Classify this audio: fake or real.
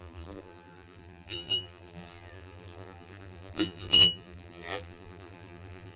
fake